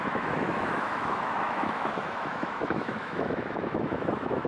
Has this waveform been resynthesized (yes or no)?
yes